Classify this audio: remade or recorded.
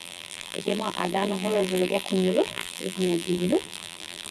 remade